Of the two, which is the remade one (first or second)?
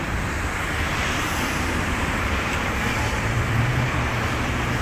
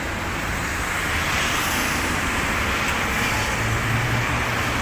first